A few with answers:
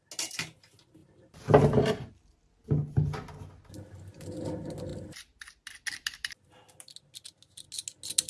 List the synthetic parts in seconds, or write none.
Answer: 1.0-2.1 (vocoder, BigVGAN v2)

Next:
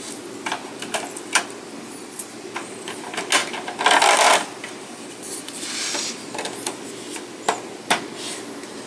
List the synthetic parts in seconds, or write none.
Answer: none

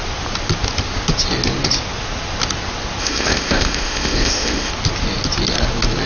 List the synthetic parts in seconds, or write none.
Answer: 3.0-4.7 (codec, ZipCodec)

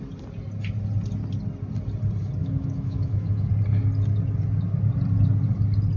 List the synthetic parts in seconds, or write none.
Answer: 2.4-3.5 (autoencoder, DAC-VAE)